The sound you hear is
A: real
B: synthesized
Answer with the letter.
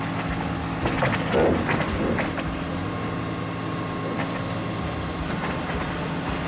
A